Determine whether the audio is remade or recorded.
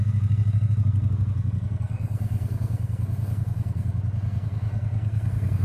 remade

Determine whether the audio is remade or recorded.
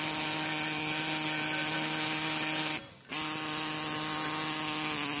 recorded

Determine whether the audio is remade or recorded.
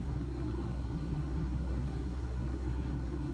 remade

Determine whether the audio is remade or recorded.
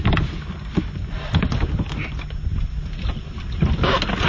recorded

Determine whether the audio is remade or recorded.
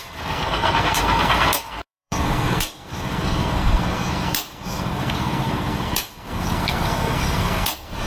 remade